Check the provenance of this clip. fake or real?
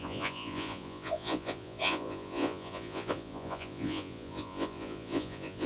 fake